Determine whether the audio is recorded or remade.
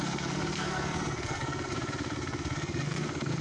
remade